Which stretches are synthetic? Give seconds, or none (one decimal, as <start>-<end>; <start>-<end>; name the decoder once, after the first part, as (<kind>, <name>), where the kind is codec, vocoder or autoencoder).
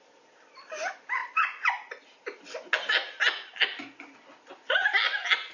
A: none